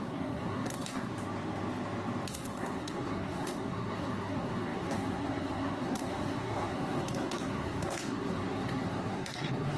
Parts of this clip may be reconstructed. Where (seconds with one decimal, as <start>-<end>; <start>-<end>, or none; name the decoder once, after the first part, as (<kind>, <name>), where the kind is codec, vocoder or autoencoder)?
0.0-1.1 (codec, SNAC); 2.3-9.8